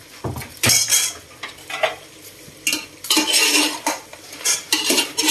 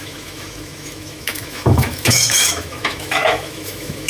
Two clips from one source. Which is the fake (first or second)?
second